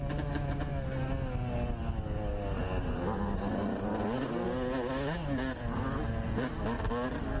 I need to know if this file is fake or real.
real